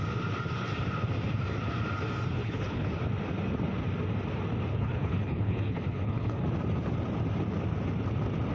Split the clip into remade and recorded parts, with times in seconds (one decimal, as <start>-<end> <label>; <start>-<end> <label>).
0.0-2.4 recorded; 2.4-2.9 remade; 2.9-4.7 recorded; 4.7-6.4 remade; 6.4-8.5 recorded